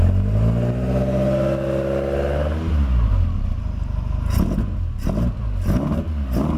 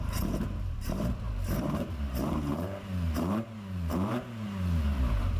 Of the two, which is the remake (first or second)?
second